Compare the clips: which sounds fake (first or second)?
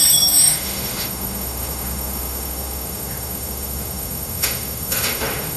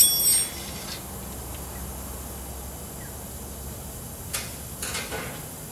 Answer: first